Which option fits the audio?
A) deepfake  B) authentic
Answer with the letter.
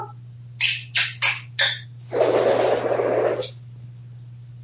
B